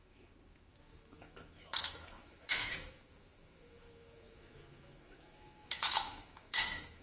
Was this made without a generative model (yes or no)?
no